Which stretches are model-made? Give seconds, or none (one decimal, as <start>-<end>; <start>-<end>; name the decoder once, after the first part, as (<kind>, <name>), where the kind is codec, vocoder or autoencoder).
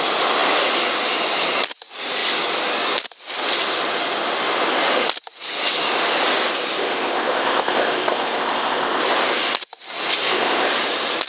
6.8-9.0 (codec, ZipCodec); 10.2-10.7